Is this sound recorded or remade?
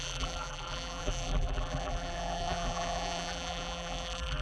remade